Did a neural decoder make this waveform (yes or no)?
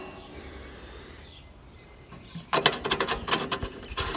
no